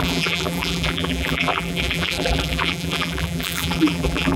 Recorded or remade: remade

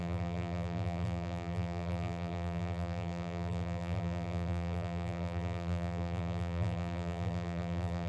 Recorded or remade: remade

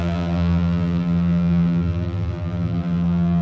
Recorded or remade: remade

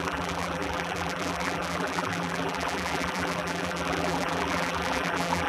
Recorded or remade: remade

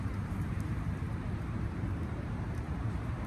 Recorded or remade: remade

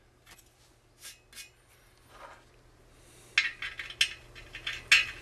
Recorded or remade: recorded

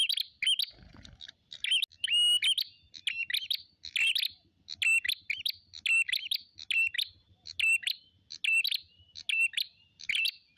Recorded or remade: recorded